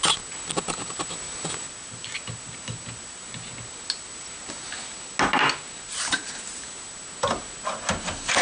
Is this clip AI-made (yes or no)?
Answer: no